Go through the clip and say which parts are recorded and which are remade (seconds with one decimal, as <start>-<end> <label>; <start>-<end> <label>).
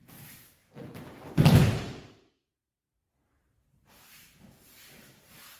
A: 0.0-0.6 remade; 0.6-1.2 recorded; 1.2-5.6 remade